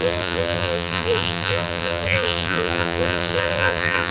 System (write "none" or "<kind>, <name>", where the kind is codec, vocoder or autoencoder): vocoder, BigVGAN v2